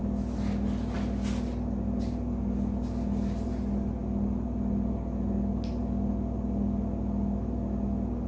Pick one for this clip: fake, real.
real